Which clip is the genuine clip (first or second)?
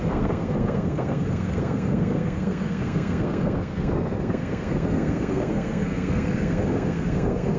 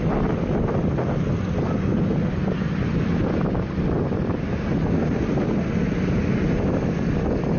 second